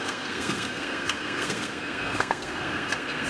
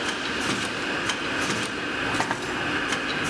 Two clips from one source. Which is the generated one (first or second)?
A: first